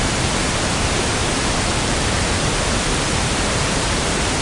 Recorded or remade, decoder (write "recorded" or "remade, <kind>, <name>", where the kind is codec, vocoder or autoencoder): remade, vocoder, BigVGAN v2